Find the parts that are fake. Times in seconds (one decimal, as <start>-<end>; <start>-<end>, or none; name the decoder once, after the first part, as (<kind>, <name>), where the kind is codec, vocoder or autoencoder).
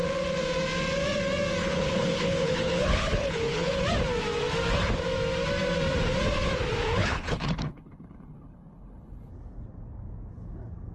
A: 1.6-3.8 (codec, HILCodec); 7.0-9.3